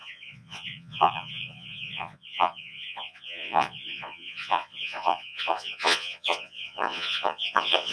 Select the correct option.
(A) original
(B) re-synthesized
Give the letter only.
B